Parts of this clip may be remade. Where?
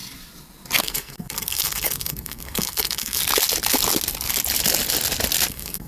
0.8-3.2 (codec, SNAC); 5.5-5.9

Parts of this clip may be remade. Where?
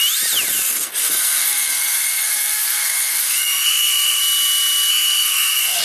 0.7-4.2 (codec, SNAC); 4.9-5.8